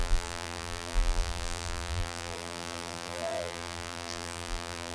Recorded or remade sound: remade